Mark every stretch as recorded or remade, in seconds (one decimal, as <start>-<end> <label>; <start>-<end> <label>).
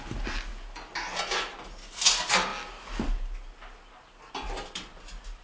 0.0-5.4 recorded